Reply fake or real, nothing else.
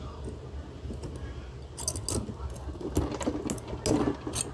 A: real